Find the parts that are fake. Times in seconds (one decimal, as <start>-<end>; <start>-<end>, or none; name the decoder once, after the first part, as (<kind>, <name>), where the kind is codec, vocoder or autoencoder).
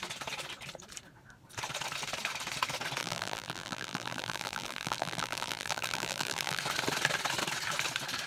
3.0-6.6 (vocoder, BigVGAN v2)